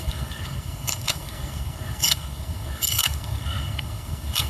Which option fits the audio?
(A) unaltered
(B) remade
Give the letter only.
B